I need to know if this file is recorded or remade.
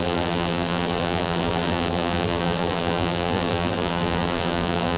remade